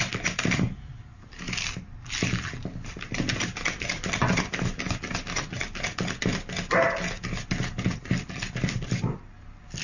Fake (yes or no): no